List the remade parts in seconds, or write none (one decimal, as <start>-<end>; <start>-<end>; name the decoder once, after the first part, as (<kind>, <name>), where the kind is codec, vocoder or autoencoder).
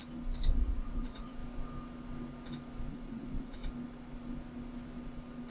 0.5-1.4 (vocoder, Vocos); 2.9-3.6